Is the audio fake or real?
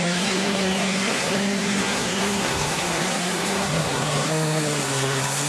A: fake